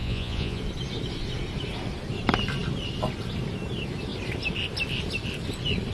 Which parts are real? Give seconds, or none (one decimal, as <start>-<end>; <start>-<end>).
0.6-5.9